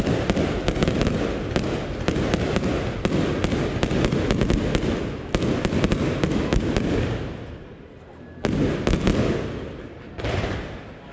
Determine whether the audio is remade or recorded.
recorded